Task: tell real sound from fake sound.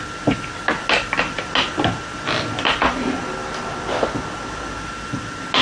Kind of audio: real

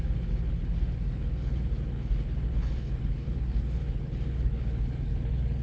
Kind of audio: fake